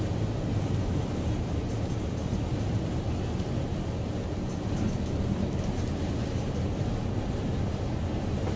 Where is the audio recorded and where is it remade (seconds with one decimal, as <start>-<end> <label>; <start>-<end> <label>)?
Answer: 0.0-8.6 recorded